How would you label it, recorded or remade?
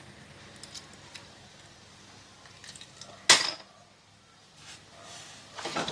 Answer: recorded